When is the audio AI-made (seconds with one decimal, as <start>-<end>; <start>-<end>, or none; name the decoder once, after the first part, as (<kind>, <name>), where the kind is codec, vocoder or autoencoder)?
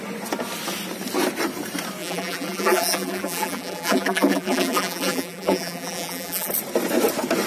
2.0-6.5 (vocoder, BigVGAN v2)